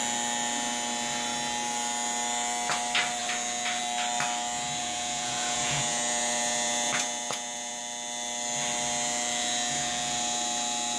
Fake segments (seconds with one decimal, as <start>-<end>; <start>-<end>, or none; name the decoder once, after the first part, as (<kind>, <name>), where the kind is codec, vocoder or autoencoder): 4.8-7.8 (vocoder, Vocos)